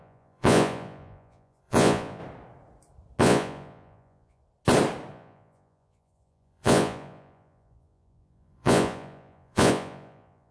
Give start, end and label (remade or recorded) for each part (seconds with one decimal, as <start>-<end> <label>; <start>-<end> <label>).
0.0-2.2 remade; 2.2-3.2 recorded; 3.2-4.4 remade; 4.4-5.1 recorded; 5.1-10.5 remade